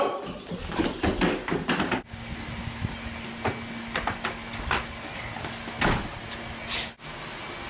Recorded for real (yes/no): yes